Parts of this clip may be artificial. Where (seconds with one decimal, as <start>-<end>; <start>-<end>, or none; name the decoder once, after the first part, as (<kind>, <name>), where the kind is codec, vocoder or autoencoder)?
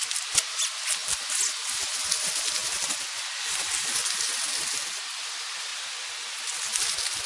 none